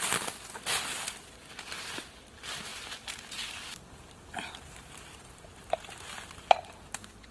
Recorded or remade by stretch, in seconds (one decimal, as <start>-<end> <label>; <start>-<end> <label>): 0.0-7.3 recorded